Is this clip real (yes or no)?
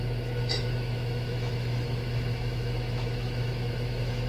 no